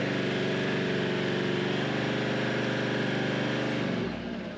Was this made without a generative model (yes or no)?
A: yes